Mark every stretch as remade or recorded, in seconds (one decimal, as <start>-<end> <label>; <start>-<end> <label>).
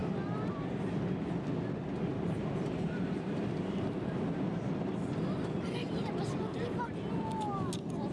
0.0-2.1 recorded; 2.1-4.9 remade; 4.9-6.5 recorded; 6.5-7.3 remade; 7.3-8.1 recorded